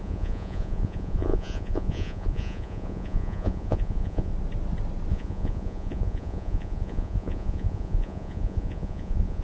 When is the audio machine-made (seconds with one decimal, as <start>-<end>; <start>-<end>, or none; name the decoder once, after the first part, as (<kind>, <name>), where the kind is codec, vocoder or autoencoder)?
0.0-4.3 (vocoder, Vocos); 5.1-9.4